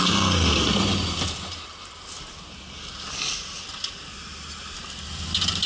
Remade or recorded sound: recorded